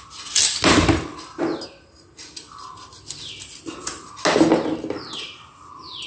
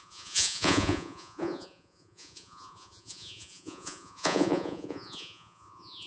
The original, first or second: first